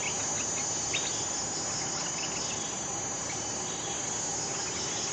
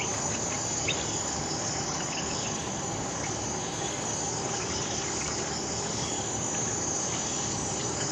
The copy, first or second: second